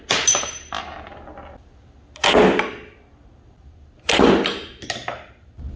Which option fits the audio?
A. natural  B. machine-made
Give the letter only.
A